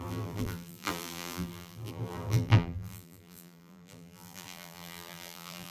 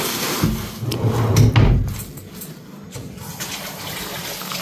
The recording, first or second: second